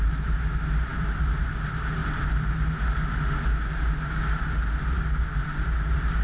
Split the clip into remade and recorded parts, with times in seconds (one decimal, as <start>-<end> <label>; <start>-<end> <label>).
0.0-2.0 remade; 2.0-4.8 recorded; 4.8-6.2 remade